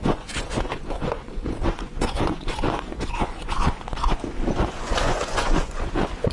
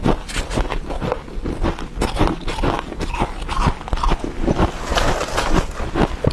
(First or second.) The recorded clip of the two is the second